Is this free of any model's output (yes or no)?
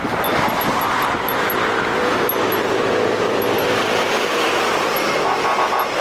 yes